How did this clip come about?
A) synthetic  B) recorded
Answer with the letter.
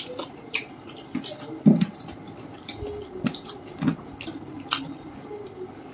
B